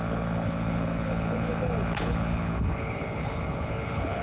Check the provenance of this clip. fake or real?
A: fake